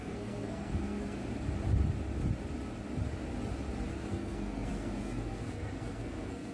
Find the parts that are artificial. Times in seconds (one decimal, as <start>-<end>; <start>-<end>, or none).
0.0-1.2; 3.9-6.5